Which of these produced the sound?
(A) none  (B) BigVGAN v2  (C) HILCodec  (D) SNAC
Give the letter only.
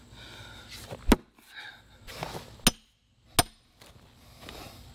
A